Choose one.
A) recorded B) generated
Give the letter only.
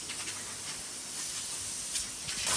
A